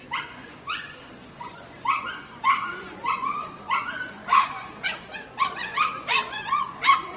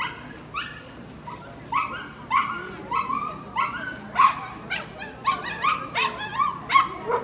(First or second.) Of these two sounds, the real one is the second